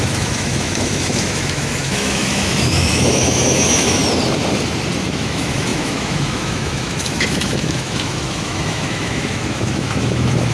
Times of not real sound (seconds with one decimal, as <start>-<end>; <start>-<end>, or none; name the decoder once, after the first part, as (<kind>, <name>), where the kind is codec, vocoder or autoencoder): 0.0-4.0 (autoencoder, DAC-VAE); 5.0-10.5